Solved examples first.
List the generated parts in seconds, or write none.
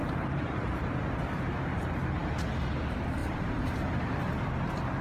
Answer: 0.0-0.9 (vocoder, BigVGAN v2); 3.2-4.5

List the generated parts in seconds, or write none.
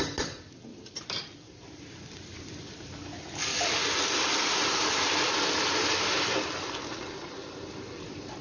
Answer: 0.7-2.0 (vocoder, BigVGAN v2)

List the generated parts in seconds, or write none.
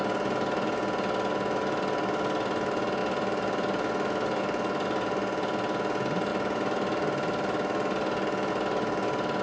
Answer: 6.3-8.5 (vocoder, BigVGAN v2)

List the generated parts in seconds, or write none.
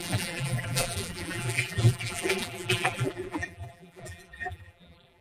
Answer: 0.0-5.2 (vocoder, BigVGAN v2)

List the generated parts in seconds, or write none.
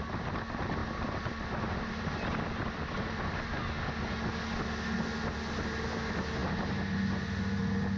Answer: 0.8-3.7 (vocoder, BigVGAN v2)